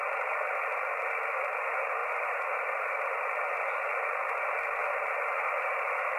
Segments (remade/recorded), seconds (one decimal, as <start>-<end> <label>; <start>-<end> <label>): 0.0-2.0 recorded; 2.0-3.1 remade; 3.1-4.8 recorded; 4.8-5.8 remade; 5.8-6.2 recorded